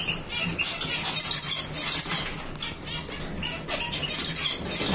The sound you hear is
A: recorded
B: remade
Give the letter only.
A